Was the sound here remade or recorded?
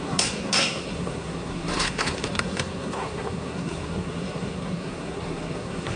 remade